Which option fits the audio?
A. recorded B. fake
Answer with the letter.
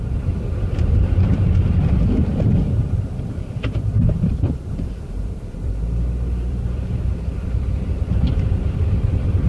B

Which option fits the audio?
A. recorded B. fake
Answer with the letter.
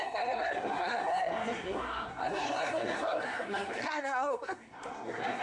B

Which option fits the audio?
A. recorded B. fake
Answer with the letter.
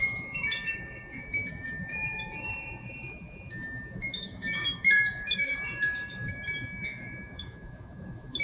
B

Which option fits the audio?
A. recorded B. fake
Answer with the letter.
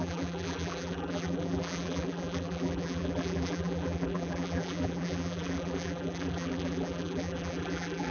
B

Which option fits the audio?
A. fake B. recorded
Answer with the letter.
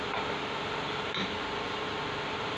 B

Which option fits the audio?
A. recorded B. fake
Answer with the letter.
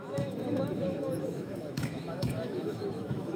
B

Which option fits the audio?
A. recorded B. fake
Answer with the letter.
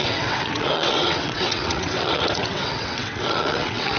B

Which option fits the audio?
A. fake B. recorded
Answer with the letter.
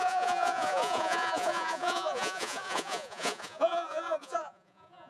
A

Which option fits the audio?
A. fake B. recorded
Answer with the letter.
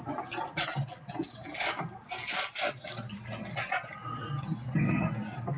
B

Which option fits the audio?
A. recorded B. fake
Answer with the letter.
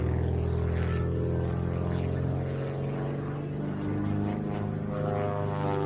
A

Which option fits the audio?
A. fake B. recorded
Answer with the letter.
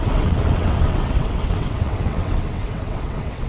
A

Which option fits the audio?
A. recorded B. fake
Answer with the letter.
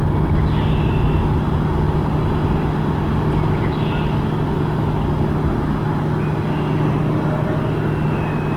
A